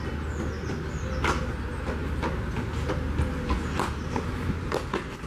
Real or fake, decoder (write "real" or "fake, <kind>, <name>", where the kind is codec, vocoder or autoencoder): real